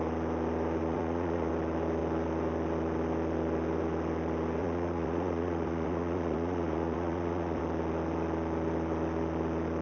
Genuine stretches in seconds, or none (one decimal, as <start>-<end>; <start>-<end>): 0.0-0.8; 1.5-4.6; 7.6-9.8